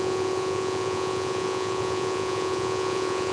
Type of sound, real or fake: fake